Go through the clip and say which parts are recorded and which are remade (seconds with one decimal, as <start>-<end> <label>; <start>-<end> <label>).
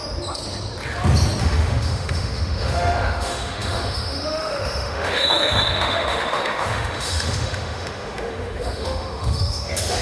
0.0-1.4 recorded; 1.4-10.0 remade